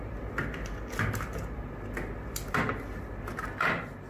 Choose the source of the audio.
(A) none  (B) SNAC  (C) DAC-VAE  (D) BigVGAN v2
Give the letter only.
A